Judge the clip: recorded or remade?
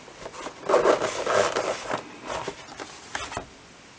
recorded